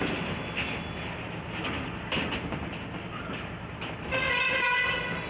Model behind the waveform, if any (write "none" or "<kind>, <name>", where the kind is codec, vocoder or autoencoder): none